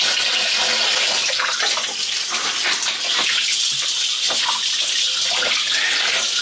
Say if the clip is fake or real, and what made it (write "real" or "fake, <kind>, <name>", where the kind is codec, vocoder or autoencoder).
real